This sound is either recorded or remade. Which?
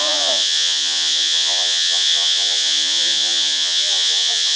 remade